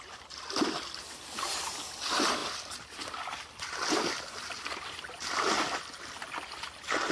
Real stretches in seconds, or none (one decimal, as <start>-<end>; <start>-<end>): 0.0-7.1